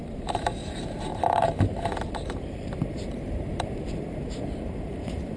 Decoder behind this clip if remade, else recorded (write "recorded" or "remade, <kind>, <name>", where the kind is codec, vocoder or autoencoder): remade, vocoder, BigVGAN v2